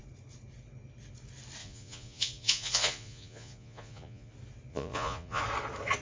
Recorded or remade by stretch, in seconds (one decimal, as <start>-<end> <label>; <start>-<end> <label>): 0.0-1.6 recorded; 1.6-4.3 remade; 4.3-4.7 recorded; 4.7-5.4 remade; 5.4-6.0 recorded